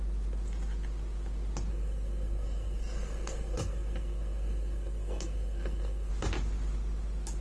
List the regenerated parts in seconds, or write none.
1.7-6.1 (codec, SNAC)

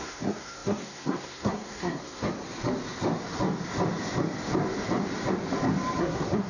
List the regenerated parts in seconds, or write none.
0.0-2.4 (codec, SNAC); 6.0-6.5

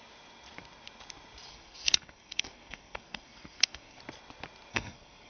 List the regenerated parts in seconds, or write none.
1.5-4.0 (codec, SNAC); 4.7-5.3